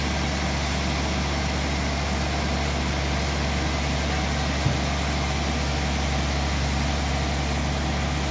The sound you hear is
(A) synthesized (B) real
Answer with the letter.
B